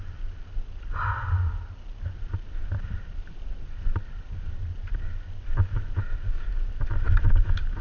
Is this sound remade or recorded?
recorded